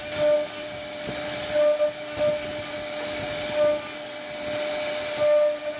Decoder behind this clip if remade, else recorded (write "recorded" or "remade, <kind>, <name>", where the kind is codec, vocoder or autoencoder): recorded